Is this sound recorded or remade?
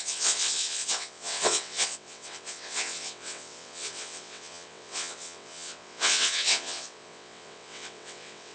remade